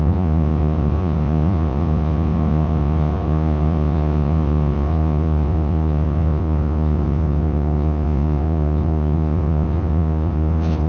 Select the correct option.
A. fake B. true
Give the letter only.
A